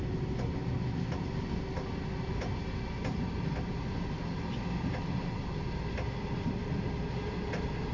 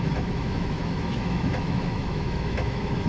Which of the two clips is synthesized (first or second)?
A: second